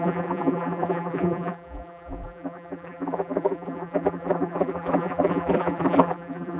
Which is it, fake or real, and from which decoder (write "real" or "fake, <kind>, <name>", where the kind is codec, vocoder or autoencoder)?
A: fake, vocoder, BigVGAN v2